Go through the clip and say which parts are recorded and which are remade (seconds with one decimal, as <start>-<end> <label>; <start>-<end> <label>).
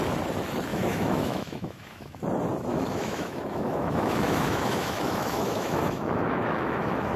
0.0-0.7 recorded; 0.7-2.2 remade; 2.2-2.7 recorded; 2.7-7.2 remade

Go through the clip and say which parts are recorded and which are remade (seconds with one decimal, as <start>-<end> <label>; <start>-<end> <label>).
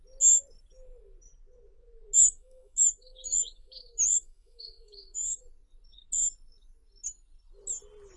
0.0-2.2 recorded; 2.2-5.4 remade; 5.4-8.2 recorded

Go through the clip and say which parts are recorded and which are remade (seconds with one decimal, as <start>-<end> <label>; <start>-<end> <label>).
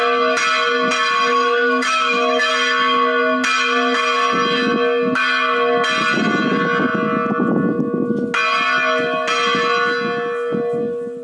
0.0-1.3 recorded; 1.3-2.5 remade; 2.5-11.2 recorded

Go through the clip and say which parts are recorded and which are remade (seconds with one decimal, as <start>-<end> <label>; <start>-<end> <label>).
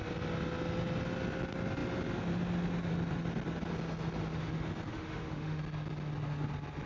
0.0-4.9 recorded; 4.9-5.6 remade; 5.6-6.9 recorded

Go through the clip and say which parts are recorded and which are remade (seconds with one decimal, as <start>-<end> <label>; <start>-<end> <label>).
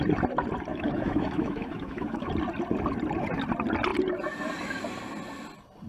0.0-0.7 recorded; 0.7-2.3 remade; 2.3-5.9 recorded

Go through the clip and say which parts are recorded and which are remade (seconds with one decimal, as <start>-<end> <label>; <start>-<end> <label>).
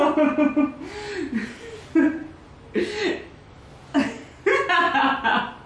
0.0-3.0 recorded; 3.0-3.7 remade; 3.7-5.7 recorded